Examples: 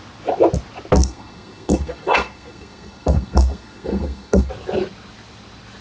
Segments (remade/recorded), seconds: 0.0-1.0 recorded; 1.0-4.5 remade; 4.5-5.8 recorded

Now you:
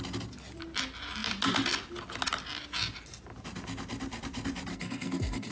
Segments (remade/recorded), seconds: 0.0-4.7 recorded; 4.7-5.5 remade

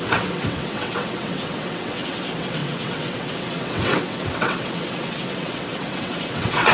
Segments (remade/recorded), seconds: 0.0-6.7 remade

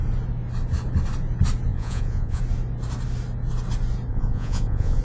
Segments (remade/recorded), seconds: 0.0-1.7 recorded; 1.7-2.4 remade; 2.4-4.1 recorded; 4.1-5.0 remade